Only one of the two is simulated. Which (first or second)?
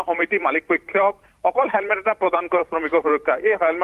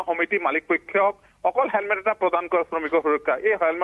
first